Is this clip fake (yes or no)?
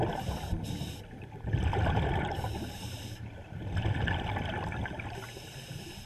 no